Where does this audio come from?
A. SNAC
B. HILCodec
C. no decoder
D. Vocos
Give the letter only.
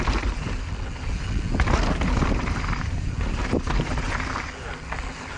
C